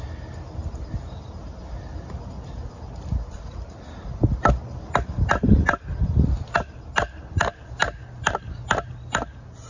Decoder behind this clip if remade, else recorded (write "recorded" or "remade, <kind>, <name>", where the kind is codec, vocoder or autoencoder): recorded